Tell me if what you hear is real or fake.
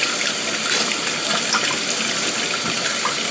real